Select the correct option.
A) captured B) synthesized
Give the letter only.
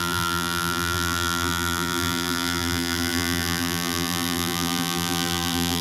B